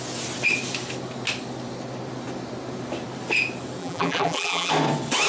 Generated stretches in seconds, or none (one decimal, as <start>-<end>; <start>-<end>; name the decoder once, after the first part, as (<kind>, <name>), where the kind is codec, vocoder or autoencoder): 3.8-4.7 (vocoder, BigVGAN v2)